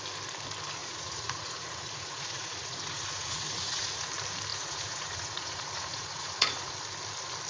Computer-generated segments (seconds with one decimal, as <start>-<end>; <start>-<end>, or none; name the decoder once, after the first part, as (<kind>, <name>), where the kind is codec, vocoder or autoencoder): 0.8-4.1 (vocoder, Vocos); 4.5-6.7